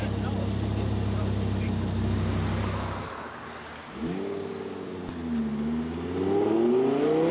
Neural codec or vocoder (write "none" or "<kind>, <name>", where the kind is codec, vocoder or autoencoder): none